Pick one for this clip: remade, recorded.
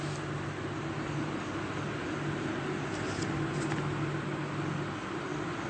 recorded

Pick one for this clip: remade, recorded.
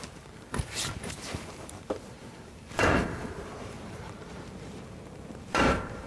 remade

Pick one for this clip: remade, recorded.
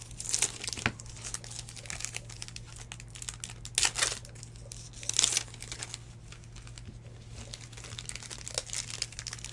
recorded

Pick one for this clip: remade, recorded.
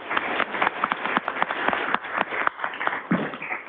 recorded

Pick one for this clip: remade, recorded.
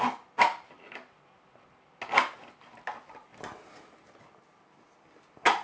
recorded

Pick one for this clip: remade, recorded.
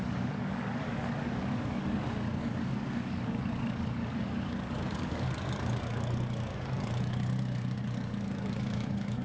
remade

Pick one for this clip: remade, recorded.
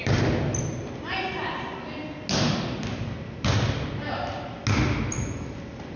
recorded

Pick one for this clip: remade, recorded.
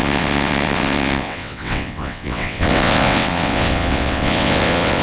remade